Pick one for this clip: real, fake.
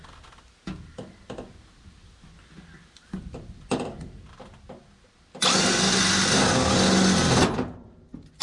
real